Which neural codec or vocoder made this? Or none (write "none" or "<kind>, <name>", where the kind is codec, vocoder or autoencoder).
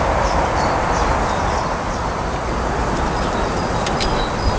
none